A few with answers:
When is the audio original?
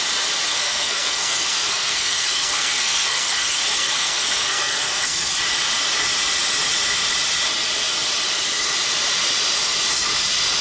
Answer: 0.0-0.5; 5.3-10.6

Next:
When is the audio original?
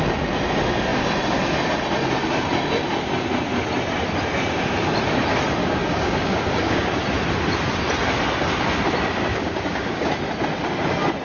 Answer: 0.0-5.6; 7.0-9.3; 10.1-11.2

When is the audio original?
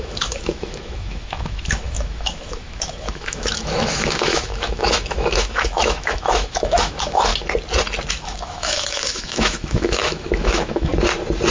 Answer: 7.3-8.1; 10.9-11.5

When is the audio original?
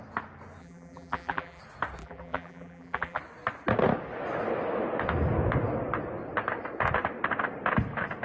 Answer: 0.0-0.6; 1.6-2.0; 3.2-8.2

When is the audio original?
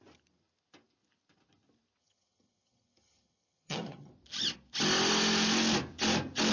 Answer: 0.0-2.0; 4.1-6.5